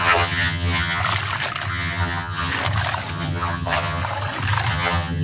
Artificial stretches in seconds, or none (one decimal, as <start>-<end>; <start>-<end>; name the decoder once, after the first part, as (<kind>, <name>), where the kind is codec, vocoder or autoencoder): 0.0-1.0 (vocoder, HiFi-GAN); 1.7-2.5; 3.1-4.0; 4.7-5.2